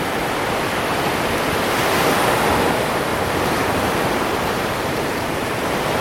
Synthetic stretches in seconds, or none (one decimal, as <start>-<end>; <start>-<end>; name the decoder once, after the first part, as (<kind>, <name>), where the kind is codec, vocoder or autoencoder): 3.1-5.4 (vocoder, BigVGAN v2)